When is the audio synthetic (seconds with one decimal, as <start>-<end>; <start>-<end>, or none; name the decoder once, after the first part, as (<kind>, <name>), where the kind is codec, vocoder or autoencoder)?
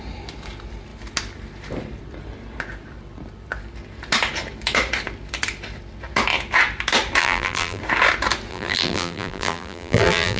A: 7.2-7.8 (vocoder, BigVGAN v2); 8.5-10.4